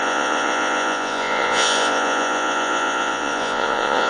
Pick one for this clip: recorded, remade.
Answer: remade